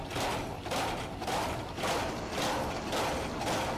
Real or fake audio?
real